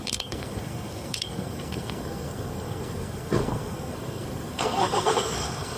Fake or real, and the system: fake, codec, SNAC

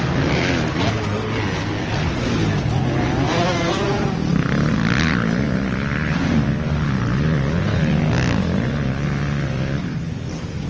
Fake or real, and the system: real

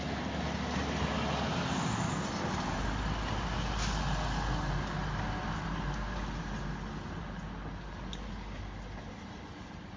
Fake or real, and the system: real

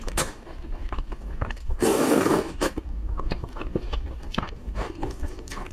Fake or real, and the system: fake, codec, DAC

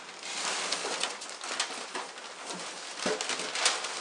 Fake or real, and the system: real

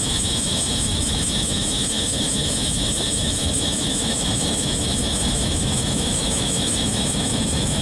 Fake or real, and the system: fake, autoencoder, DAC-VAE